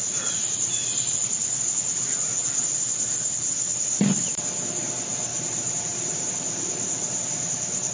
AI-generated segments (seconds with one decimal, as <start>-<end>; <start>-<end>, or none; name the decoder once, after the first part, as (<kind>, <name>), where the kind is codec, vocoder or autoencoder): 0.0-0.9 (vocoder, BigVGAN v2); 4.7-7.9